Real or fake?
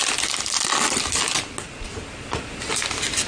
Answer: real